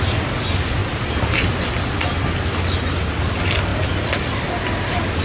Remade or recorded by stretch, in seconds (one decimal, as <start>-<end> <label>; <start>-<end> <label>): 0.0-5.2 recorded